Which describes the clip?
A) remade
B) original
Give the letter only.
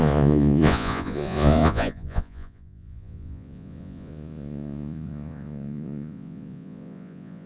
A